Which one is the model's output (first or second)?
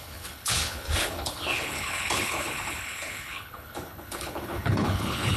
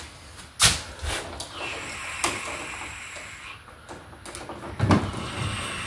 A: first